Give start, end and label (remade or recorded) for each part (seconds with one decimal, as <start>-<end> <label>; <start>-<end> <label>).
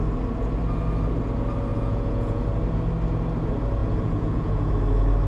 0.0-1.7 recorded; 1.7-2.4 remade; 2.4-3.8 recorded; 3.8-4.7 remade; 4.7-5.3 recorded